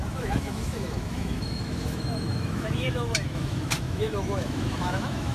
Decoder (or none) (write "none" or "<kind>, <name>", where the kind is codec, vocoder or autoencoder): autoencoder, DAC-VAE